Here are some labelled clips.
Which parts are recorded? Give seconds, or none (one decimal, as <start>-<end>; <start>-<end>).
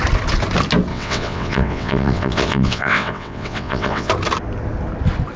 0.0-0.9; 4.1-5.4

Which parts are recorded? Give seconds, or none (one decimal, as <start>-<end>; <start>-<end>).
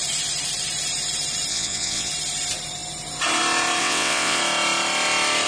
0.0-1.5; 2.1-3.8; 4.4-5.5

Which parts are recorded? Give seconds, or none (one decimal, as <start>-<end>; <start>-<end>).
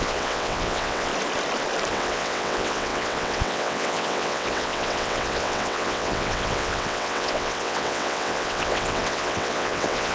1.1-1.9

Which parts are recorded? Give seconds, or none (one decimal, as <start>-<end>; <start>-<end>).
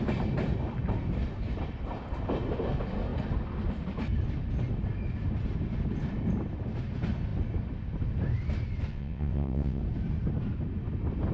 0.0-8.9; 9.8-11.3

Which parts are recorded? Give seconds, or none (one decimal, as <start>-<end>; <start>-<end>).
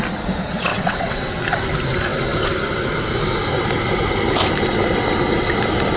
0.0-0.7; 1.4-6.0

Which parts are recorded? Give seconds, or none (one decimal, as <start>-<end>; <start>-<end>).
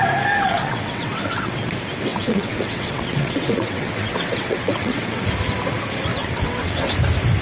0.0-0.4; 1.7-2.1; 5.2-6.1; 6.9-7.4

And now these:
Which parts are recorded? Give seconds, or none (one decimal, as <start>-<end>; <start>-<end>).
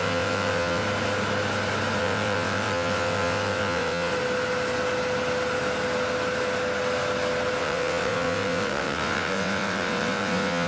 0.8-2.0; 4.1-7.6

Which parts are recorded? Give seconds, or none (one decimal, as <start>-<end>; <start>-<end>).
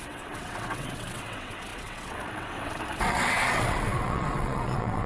none